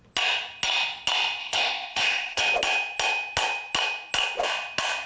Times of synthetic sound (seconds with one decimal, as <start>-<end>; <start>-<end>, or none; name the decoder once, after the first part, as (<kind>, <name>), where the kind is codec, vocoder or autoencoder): 1.4-2.4 (codec, ZipCodec)